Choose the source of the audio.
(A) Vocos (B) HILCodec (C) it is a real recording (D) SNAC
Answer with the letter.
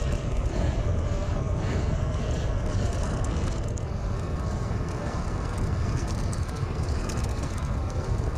D